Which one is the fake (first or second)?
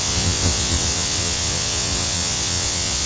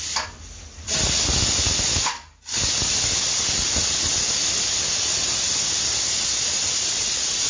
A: first